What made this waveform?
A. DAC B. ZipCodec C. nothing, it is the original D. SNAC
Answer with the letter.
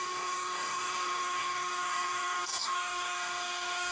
A